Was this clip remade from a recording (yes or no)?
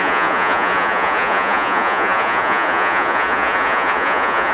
yes